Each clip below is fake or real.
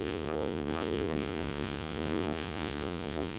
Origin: fake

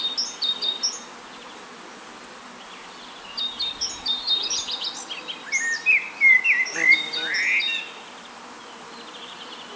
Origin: real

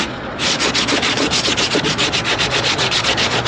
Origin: fake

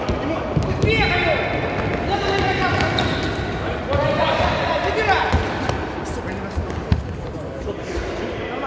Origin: real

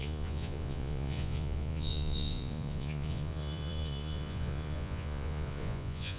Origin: fake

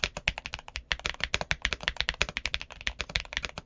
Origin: real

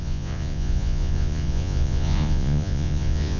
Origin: fake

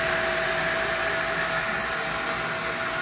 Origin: real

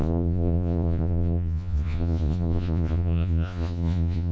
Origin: fake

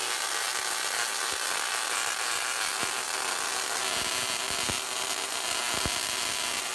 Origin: real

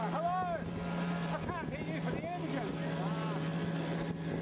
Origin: real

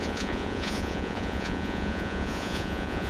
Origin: fake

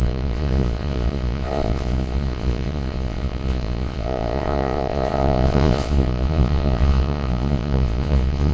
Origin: fake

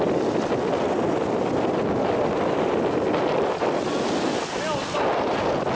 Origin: real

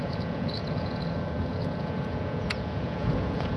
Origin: fake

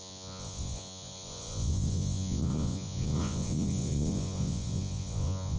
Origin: fake